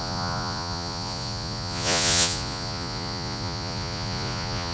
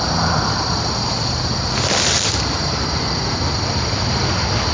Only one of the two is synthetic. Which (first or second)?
first